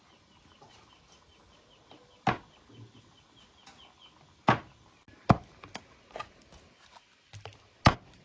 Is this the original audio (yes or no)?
yes